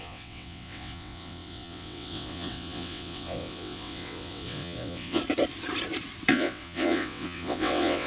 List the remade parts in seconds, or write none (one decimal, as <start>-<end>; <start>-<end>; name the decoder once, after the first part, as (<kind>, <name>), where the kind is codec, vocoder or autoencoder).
0.0-5.2 (vocoder, WaveNeXt); 6.3-8.1